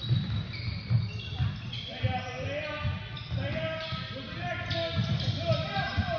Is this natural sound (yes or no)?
yes